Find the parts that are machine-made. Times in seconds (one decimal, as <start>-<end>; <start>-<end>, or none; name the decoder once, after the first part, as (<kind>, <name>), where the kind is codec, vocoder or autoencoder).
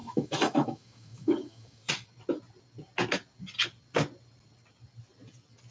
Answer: 0.0-1.9 (autoencoder, DAC-VAE)